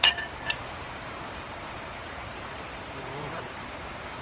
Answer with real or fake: fake